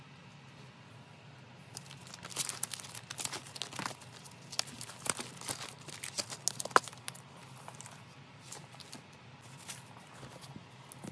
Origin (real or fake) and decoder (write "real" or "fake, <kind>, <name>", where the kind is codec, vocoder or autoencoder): real